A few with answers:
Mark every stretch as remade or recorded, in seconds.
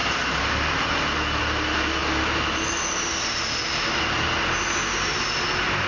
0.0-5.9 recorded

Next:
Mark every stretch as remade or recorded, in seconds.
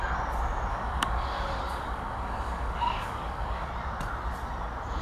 0.0-0.7 recorded; 0.7-3.7 remade; 3.7-5.0 recorded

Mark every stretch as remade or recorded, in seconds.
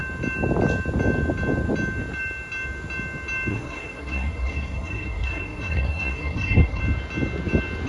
0.0-3.5 recorded; 3.5-6.8 remade; 6.8-7.9 recorded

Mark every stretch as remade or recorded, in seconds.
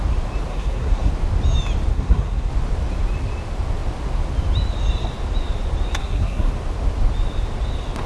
0.0-0.5 recorded; 0.5-1.1 remade; 1.1-1.9 recorded; 1.9-2.5 remade; 2.5-6.0 recorded; 6.0-6.5 remade; 6.5-8.1 recorded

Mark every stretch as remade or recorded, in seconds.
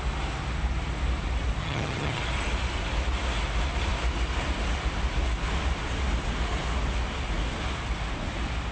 0.0-1.6 recorded; 1.6-2.2 remade; 2.2-8.7 recorded